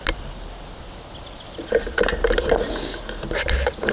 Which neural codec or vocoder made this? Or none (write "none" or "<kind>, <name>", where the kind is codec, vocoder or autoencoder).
none